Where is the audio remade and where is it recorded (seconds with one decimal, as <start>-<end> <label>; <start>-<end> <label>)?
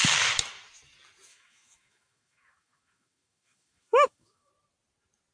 0.0-1.3 recorded; 1.3-4.5 remade; 4.5-5.3 recorded